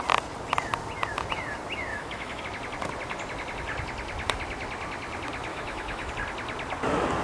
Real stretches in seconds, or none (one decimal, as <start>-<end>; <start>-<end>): 0.0-1.9; 2.4-5.5; 6.1-7.2